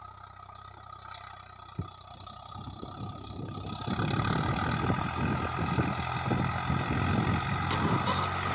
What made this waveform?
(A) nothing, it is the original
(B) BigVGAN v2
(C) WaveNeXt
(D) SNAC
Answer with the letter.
A